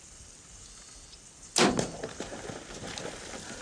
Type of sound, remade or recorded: recorded